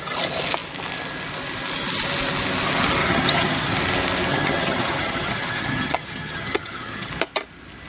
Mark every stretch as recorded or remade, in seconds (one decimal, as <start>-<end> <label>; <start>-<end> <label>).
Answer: 0.0-3.0 recorded; 3.0-3.7 remade; 3.7-4.3 recorded; 4.3-7.1 remade; 7.1-7.9 recorded